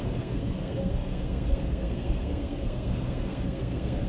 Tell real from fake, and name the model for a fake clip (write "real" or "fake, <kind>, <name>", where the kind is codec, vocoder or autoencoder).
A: fake, codec, SNAC